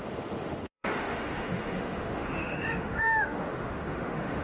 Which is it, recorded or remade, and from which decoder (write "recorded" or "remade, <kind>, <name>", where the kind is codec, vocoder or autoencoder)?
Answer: remade, autoencoder, DAC-VAE